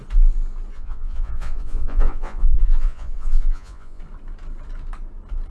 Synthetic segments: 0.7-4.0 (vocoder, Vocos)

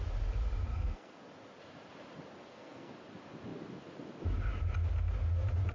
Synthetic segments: 0.7-1.2 (codec, SNAC); 2.4-2.9

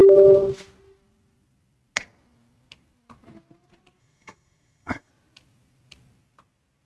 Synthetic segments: 4.0-5.1 (codec, SNAC)